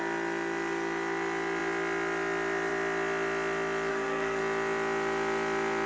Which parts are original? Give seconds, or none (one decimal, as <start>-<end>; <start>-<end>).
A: 0.0-3.9; 4.4-5.9